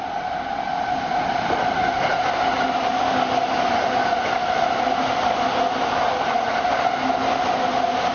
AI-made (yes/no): no